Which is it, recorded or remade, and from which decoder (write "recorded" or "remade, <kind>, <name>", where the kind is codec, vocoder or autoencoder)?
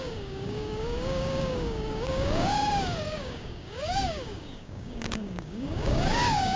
remade, codec, DAC